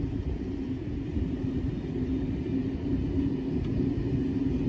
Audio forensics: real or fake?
real